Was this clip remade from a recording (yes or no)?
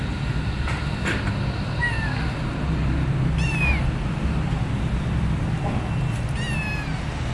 no